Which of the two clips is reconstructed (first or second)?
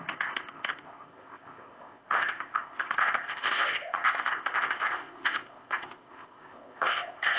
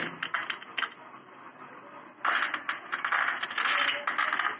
first